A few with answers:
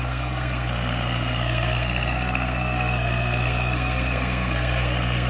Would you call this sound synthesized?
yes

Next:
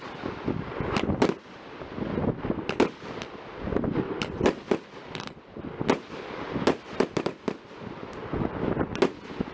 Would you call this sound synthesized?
no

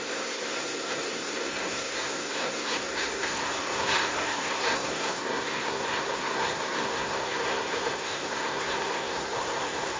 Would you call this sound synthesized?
yes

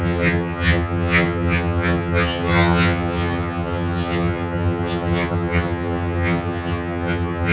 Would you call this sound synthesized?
yes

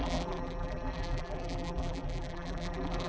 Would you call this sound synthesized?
yes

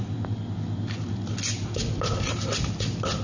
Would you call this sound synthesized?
no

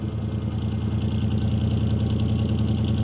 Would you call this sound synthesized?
no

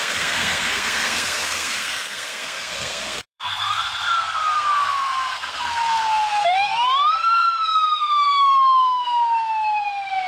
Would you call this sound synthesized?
yes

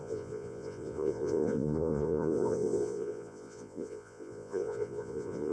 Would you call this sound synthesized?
yes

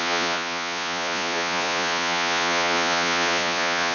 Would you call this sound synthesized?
yes